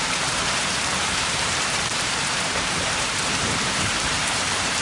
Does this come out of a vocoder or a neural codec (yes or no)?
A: yes